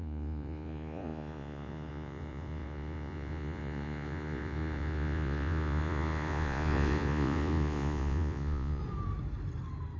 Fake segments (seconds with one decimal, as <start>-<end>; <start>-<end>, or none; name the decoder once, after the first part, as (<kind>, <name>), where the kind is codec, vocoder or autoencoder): 0.0-8.8 (vocoder, Vocos)